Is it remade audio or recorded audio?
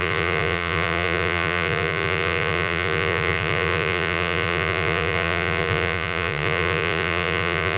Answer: remade